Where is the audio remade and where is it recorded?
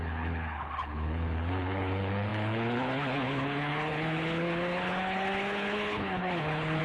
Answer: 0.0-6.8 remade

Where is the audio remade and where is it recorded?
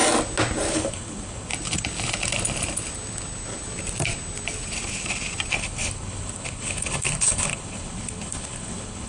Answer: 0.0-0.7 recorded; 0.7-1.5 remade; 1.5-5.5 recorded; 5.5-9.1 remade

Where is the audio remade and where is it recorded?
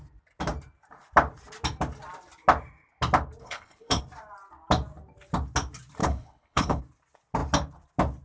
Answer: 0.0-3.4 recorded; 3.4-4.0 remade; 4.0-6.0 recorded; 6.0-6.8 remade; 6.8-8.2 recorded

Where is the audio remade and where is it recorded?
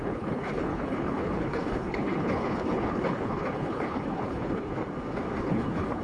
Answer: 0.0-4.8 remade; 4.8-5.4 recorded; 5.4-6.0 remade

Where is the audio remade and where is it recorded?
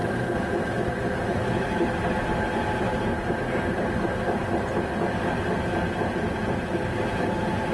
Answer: 0.0-7.7 recorded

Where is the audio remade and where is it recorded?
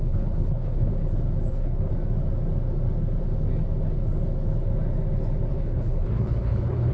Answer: 0.0-0.9 remade; 0.9-1.5 recorded; 1.5-1.9 remade; 1.9-5.5 recorded; 5.5-6.9 remade